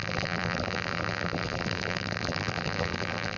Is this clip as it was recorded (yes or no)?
no